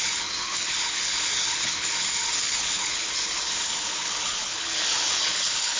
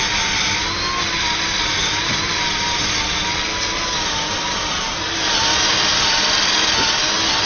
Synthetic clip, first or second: first